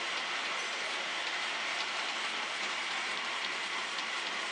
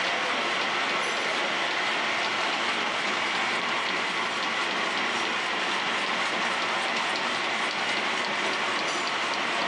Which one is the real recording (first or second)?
second